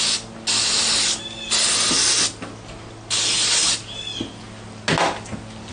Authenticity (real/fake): real